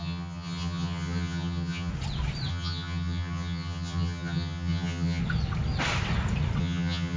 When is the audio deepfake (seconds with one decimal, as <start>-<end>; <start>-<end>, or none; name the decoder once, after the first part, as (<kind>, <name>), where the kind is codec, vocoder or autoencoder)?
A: 0.0-1.9 (vocoder, HiFi-GAN); 2.5-5.2; 6.6-7.2